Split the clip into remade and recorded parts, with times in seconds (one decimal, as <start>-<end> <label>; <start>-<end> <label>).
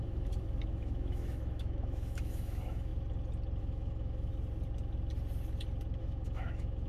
0.0-2.9 remade; 2.9-3.6 recorded; 3.6-4.3 remade; 4.3-6.0 recorded; 6.0-6.9 remade